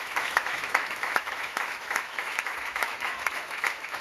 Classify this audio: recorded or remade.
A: remade